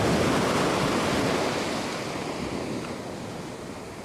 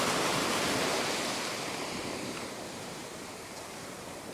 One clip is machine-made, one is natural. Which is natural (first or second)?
first